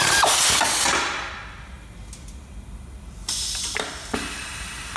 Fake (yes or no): no